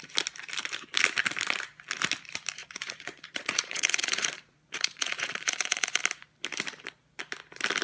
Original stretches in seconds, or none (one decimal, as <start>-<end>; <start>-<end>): 0.0-2.6; 6.0-7.8